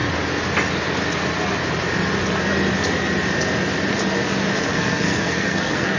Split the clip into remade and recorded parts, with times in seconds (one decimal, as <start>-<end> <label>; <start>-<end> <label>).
0.0-4.7 recorded; 4.7-6.0 remade